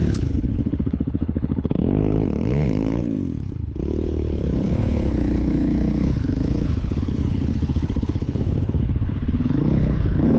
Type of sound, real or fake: fake